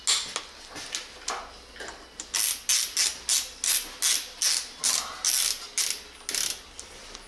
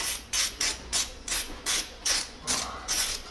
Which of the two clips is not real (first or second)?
second